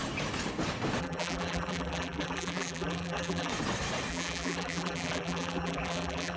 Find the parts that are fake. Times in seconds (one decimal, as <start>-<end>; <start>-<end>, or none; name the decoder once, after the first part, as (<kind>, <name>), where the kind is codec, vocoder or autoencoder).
1.0-3.5 (vocoder, BigVGAN v2); 4.1-6.4